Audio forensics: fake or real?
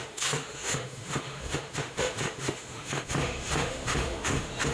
fake